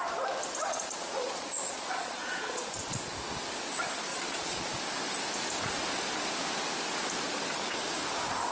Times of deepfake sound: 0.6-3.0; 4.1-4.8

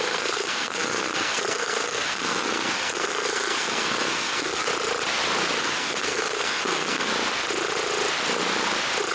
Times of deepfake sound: 0.0-4.7; 5.6-7.1

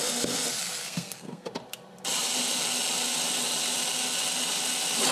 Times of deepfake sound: 0.8-1.5

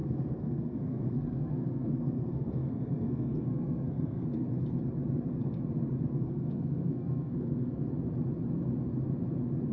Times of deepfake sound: 0.0-4.5; 6.1-7.8

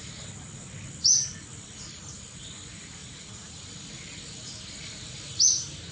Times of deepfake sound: 3.0-3.6